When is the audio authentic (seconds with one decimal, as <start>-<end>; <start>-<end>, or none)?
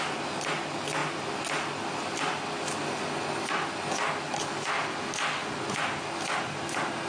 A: 0.0-7.1